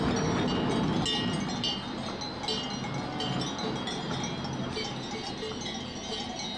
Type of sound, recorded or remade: recorded